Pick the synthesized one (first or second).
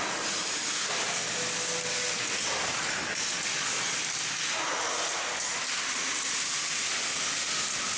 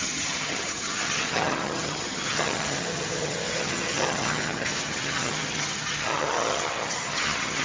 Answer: second